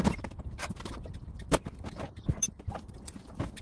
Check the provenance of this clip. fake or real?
fake